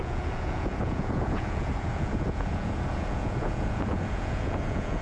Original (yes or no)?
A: no